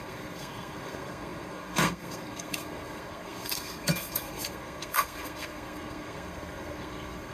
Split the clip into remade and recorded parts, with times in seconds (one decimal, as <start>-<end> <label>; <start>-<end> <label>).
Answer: 0.0-7.3 remade